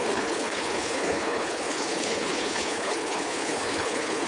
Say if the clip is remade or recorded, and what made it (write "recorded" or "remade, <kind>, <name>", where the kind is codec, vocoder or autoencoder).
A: remade, codec, HILCodec